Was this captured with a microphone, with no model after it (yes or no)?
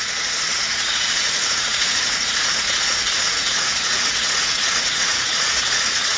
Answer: no